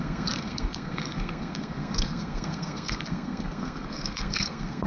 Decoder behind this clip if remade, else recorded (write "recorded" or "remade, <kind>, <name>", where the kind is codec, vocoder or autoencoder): remade, codec, SNAC